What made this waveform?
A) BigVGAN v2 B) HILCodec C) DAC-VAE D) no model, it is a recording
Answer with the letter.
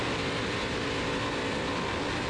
D